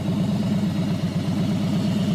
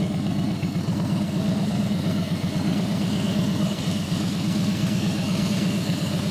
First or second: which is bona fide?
first